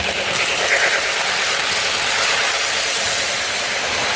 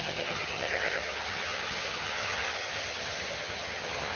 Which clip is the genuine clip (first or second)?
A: first